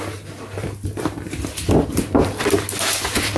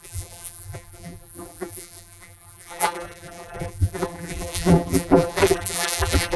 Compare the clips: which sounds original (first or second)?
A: first